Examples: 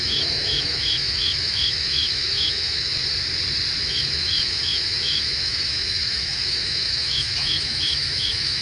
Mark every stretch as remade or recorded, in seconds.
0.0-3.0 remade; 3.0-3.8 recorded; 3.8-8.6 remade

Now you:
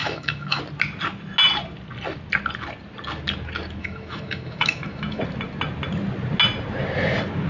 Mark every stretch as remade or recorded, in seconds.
0.0-0.6 remade; 0.6-3.8 recorded; 3.8-5.2 remade; 5.2-7.5 recorded